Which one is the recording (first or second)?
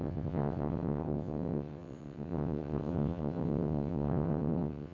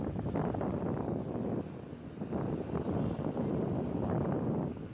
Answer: second